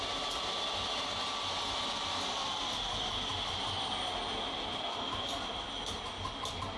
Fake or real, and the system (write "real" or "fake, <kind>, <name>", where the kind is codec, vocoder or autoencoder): real